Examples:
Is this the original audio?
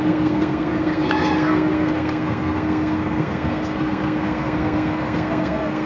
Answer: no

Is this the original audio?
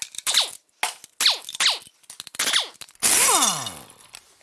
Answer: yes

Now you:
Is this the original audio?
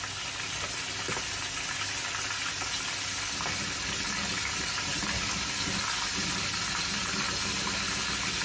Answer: yes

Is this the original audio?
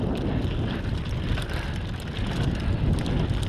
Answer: yes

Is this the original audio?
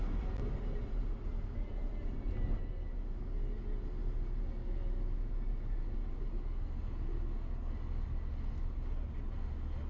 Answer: yes